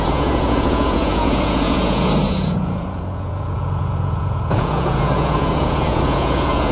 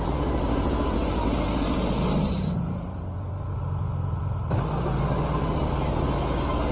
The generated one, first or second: first